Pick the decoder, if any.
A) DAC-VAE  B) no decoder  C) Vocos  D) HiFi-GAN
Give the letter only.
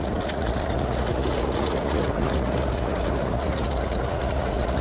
C